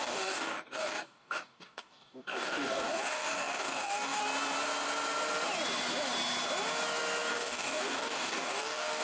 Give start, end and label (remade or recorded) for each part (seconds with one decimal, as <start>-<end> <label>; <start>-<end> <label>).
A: 0.0-4.2 remade; 4.2-7.3 recorded; 7.3-9.0 remade